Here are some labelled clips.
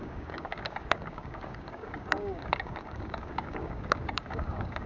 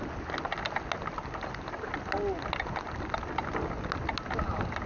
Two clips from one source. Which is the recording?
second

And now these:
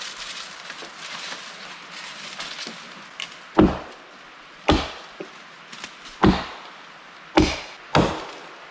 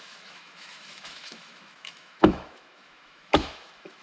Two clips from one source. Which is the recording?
first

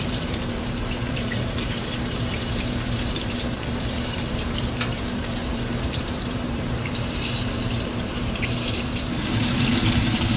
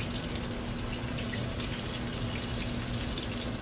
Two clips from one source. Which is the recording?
second